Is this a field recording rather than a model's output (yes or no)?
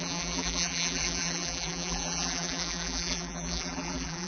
no